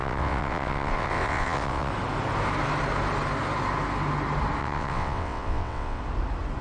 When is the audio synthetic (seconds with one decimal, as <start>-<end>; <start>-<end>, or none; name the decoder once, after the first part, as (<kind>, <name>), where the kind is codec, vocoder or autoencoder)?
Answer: 0.0-1.9 (vocoder, WaveNeXt); 4.6-6.0